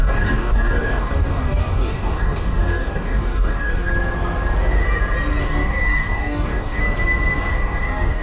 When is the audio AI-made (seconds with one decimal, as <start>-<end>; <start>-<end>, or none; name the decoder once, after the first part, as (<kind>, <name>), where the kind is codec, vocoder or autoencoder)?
0.0-3.9 (codec, DAC); 5.4-6.8; 7.5-8.2